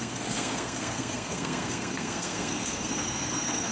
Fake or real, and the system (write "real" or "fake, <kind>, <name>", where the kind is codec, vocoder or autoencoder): fake, codec, SNAC